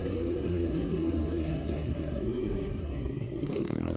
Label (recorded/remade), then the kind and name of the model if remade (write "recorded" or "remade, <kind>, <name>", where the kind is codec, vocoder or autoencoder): remade, codec, SNAC